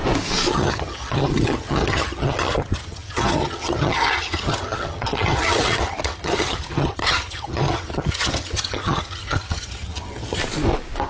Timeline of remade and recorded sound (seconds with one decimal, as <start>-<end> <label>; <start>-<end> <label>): 0.0-0.5 recorded; 0.5-10.4 remade; 10.4-11.1 recorded